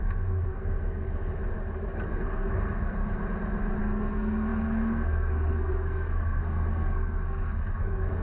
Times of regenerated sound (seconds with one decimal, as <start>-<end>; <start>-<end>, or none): 0.0-1.4; 2.1-3.2; 3.8-8.2